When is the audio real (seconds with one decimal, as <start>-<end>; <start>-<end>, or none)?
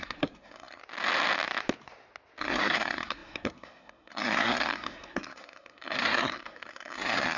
0.8-2.4